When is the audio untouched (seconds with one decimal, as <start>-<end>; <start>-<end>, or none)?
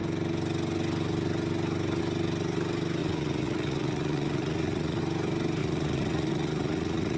0.0-3.0; 5.0-5.6